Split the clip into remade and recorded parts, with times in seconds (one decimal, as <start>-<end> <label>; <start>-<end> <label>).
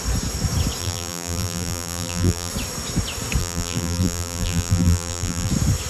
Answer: 0.0-0.8 recorded; 0.8-2.5 remade; 2.5-3.4 recorded; 3.4-5.5 remade; 5.5-5.9 recorded